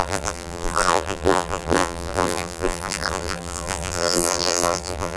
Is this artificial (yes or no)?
yes